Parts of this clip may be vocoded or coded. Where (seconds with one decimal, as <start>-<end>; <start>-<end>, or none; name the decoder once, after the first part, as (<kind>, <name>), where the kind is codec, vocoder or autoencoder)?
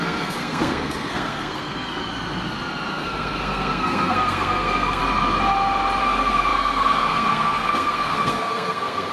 0.0-2.0 (codec, SNAC); 2.9-5.0; 6.0-9.1